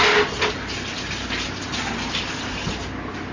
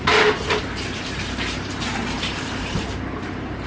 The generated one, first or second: second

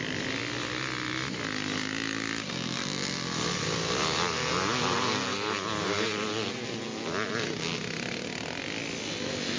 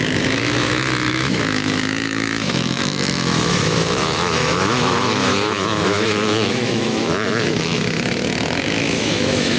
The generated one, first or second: second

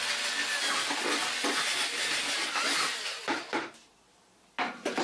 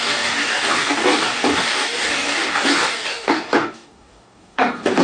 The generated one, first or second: second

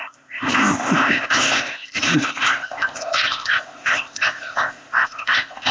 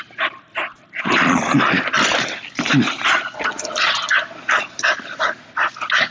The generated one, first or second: first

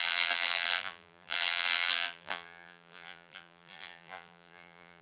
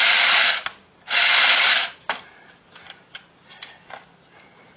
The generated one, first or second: first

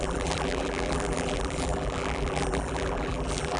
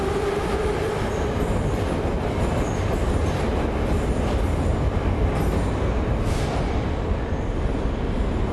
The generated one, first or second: first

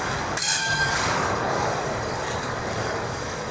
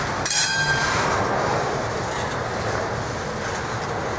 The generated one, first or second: first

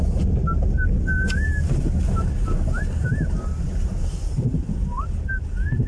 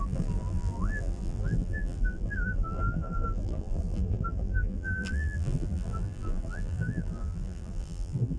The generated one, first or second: second